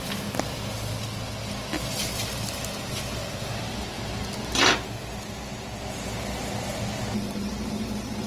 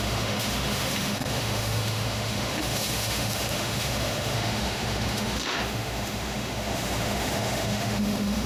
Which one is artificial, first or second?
second